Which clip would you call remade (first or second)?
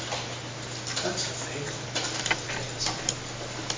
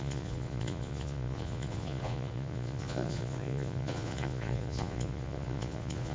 second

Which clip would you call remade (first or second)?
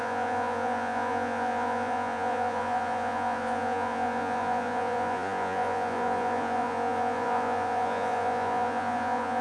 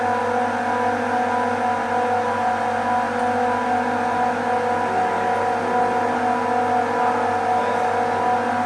first